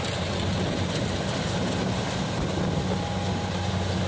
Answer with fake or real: real